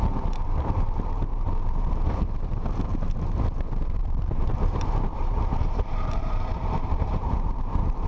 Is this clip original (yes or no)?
no